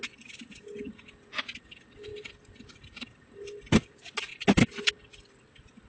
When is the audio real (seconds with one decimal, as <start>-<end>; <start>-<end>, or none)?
0.0-4.3; 5.3-5.9